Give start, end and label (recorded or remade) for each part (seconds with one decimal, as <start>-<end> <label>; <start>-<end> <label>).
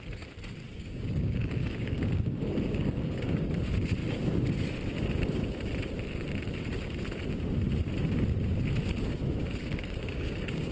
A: 0.0-0.7 recorded; 0.7-3.5 remade; 3.5-9.6 recorded; 9.6-10.7 remade